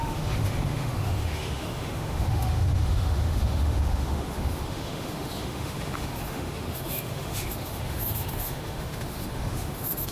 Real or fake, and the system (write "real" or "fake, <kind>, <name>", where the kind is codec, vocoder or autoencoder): fake, autoencoder, DAC-VAE